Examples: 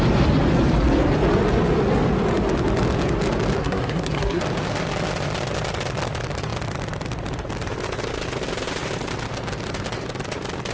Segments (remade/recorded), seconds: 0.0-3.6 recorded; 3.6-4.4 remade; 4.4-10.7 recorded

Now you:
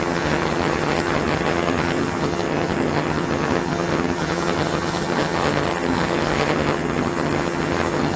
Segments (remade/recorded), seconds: 0.0-8.2 remade

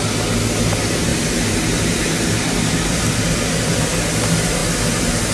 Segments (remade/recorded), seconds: 0.0-1.1 recorded; 1.1-3.7 remade; 3.7-5.3 recorded

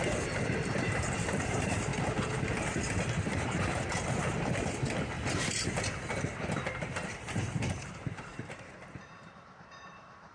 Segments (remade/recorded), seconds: 0.0-0.6 recorded; 0.6-1.9 remade; 1.9-6.8 recorded; 6.8-10.3 remade

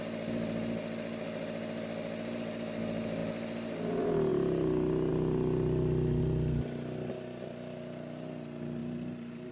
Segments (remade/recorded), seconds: 0.0-9.5 recorded

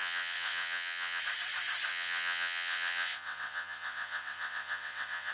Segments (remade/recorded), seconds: 0.0-1.2 remade; 1.2-1.9 recorded; 1.9-5.3 remade

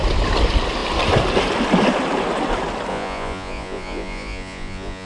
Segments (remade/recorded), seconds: 0.0-2.9 recorded; 2.9-5.1 remade

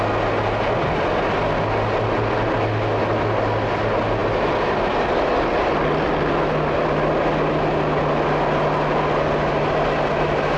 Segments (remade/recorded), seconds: 0.0-10.6 recorded